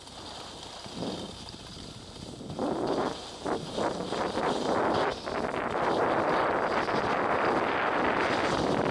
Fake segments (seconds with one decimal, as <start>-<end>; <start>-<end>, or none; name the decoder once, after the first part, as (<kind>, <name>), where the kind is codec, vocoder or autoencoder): none